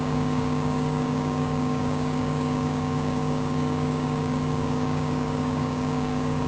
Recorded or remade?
remade